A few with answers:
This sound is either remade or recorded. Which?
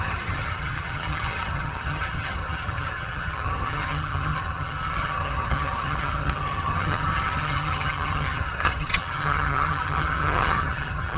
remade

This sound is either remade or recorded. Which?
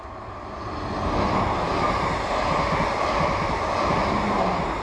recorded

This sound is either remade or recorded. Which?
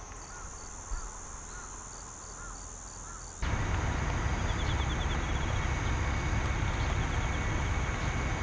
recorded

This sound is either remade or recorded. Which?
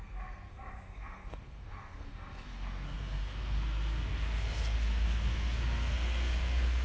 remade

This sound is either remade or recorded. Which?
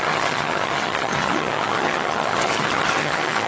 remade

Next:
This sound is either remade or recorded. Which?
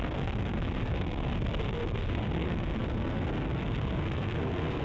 remade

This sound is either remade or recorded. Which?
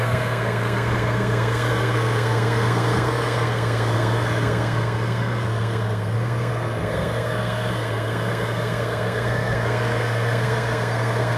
remade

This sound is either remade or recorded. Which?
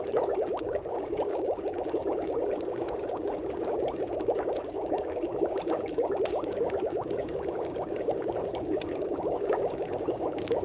remade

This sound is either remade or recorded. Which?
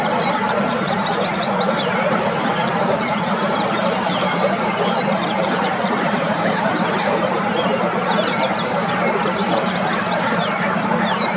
remade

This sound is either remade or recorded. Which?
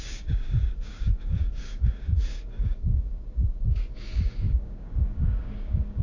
remade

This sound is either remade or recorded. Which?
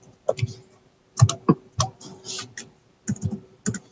recorded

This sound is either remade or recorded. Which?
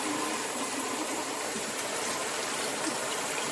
remade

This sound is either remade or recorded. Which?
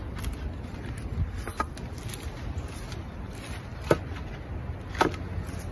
recorded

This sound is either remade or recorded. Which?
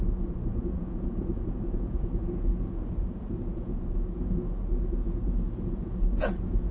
remade